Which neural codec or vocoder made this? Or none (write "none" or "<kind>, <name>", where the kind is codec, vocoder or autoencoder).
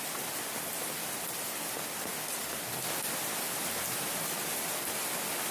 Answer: none